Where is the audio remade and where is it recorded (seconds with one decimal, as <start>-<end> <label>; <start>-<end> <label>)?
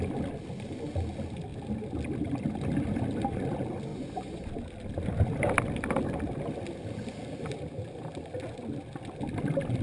0.0-3.9 recorded; 3.9-4.5 remade; 4.5-9.8 recorded